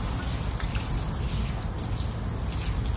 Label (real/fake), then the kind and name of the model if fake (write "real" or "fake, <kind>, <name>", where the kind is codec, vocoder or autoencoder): real